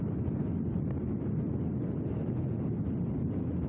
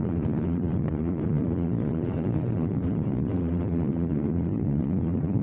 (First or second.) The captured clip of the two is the first